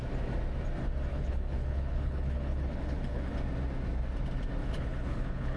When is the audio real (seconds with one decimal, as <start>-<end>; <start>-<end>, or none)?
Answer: 0.0-1.1; 3.3-4.6